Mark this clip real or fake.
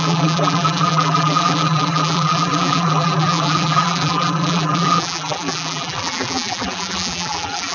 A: fake